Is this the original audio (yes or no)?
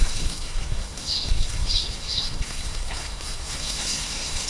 no